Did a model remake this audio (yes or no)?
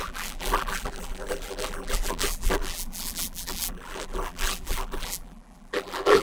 yes